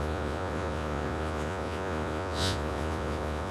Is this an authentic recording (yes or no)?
no